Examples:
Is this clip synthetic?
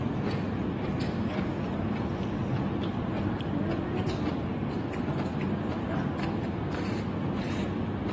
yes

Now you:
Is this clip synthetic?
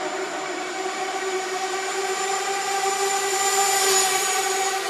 yes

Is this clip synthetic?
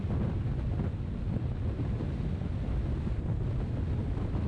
no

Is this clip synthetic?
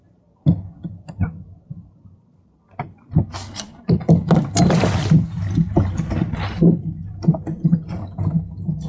no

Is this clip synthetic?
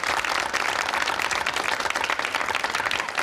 no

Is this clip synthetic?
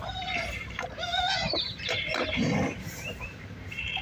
yes